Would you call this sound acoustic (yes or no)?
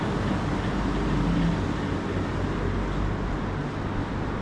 yes